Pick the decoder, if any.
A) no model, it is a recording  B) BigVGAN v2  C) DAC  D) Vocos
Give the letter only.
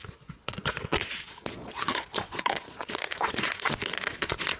D